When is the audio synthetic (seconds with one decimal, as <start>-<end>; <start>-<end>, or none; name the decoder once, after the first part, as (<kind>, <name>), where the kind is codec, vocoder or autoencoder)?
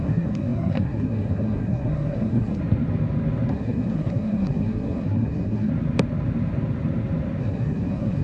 0.0-2.6 (codec, SNAC); 3.5-5.7; 7.4-8.2